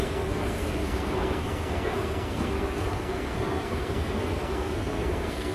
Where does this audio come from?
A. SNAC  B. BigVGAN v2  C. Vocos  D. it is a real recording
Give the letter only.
A